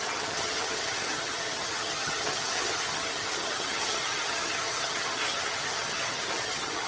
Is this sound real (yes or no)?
no